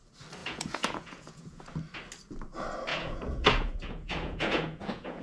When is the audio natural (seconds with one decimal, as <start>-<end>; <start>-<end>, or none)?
0.0-0.4; 1.6-2.9